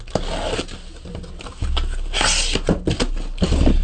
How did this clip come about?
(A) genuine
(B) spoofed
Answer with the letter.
A